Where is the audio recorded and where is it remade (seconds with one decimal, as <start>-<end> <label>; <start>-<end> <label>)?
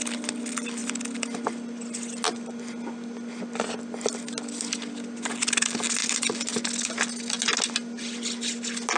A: 0.0-9.0 recorded